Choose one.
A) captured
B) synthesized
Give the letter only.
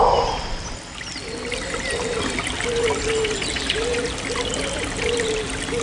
A